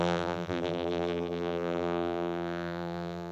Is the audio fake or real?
fake